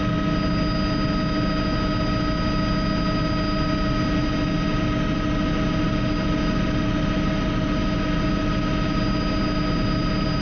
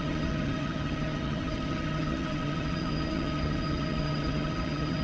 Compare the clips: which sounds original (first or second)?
first